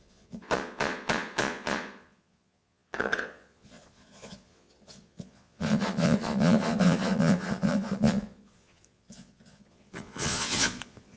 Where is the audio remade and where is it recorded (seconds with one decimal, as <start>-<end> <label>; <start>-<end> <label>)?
0.0-11.2 remade